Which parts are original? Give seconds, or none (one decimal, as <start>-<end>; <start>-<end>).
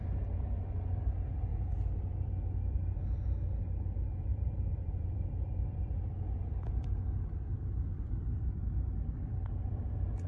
0.0-4.3; 6.1-7.5; 8.6-10.3